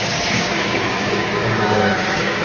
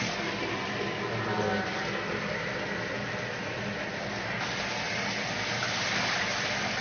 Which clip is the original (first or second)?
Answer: second